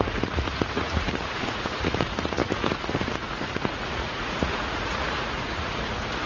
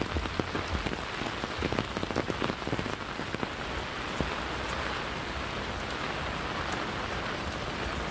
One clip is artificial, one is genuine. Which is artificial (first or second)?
first